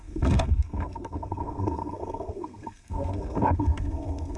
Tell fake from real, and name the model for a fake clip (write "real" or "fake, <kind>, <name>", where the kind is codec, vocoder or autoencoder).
fake, codec, SNAC